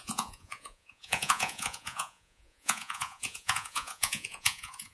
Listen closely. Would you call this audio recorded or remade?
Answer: remade